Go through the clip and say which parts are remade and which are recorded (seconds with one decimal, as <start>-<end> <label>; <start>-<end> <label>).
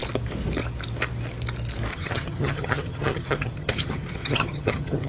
0.0-1.9 recorded; 1.9-5.1 remade